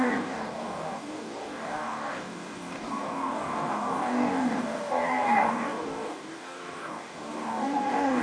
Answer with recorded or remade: remade